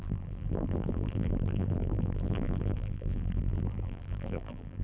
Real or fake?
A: fake